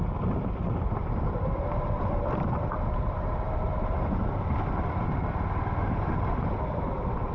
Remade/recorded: recorded